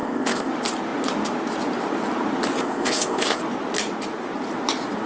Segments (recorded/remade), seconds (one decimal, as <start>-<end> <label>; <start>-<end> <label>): 0.0-0.5 remade; 0.5-2.6 recorded; 2.6-3.4 remade; 3.4-5.1 recorded